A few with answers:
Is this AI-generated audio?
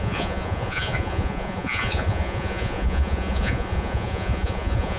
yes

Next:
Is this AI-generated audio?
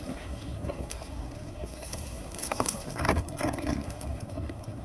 yes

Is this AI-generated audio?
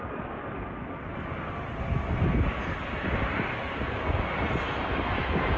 no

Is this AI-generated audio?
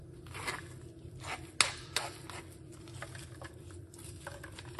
no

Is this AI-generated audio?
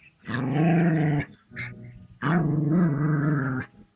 no